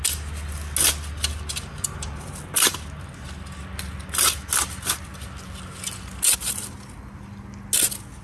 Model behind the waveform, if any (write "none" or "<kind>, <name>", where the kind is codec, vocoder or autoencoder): none